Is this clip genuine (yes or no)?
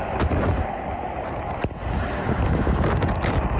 yes